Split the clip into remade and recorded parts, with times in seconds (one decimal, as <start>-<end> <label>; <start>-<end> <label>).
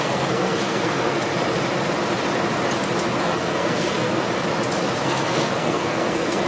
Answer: 0.0-1.3 remade; 1.3-3.2 recorded; 3.2-4.2 remade; 4.2-5.0 recorded; 5.0-6.5 remade